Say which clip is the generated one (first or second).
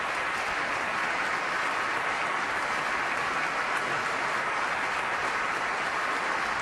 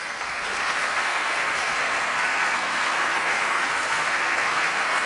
second